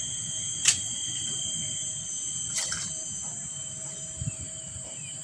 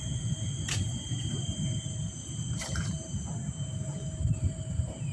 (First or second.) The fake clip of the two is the second